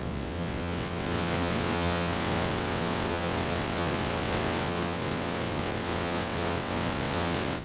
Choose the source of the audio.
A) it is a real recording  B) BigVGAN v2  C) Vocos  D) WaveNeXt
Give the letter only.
D